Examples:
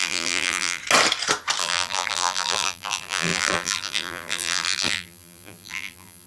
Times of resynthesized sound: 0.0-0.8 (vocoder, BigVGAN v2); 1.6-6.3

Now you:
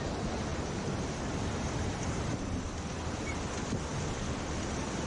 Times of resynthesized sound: 0.5-1.1 (vocoder, BigVGAN v2); 1.6-3.5

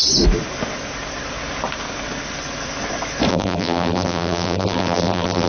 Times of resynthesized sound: 3.3-5.5 (vocoder, BigVGAN v2)

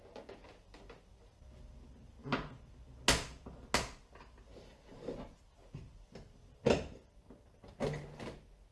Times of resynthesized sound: none

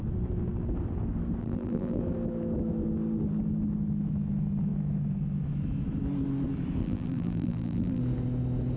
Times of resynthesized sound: 1.4-2.0 (vocoder, BigVGAN v2); 6.8-8.0

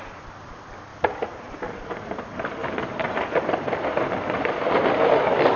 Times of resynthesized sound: 0.0-0.9 (vocoder, BigVGAN v2); 1.4-5.6